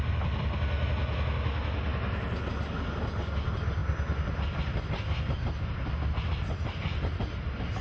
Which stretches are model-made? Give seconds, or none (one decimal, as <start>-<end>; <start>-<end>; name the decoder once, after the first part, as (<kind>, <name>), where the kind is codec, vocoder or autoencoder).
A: none